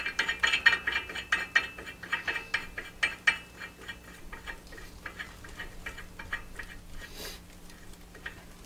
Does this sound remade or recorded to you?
recorded